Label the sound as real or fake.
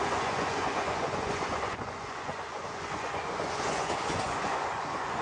fake